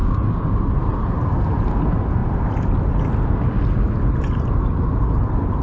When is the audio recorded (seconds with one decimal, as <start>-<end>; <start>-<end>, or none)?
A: 0.6-5.6